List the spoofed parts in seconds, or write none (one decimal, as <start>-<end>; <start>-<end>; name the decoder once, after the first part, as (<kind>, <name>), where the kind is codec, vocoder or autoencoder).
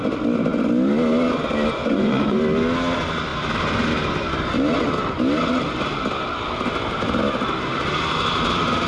1.8-2.4 (vocoder, Vocos)